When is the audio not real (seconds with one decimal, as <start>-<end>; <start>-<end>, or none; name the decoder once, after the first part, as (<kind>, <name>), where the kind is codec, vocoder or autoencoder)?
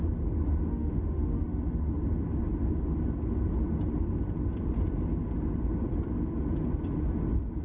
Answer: 0.7-1.6 (autoencoder, DAC-VAE)